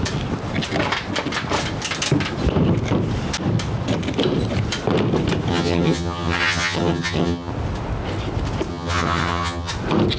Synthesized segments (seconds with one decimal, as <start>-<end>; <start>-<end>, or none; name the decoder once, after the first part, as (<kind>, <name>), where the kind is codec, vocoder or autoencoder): 5.5-7.5 (vocoder, HiFi-GAN); 8.7-9.7